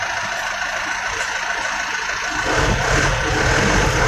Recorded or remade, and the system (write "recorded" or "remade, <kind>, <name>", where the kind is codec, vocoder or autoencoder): recorded